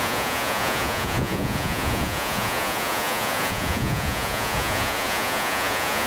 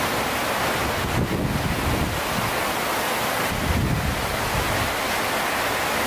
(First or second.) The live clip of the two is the second